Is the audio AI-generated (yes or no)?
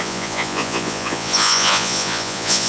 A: yes